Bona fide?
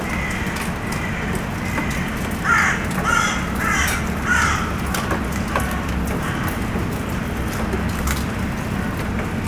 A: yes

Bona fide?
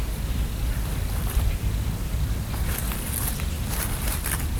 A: yes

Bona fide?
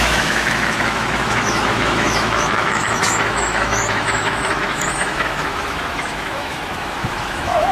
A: no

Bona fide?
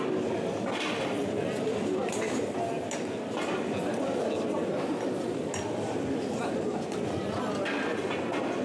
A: yes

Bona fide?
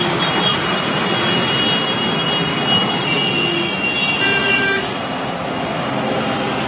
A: yes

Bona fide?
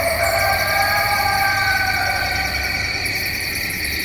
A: yes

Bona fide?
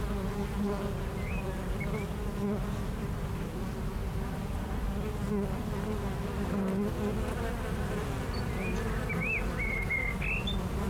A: yes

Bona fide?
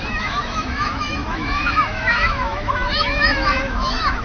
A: no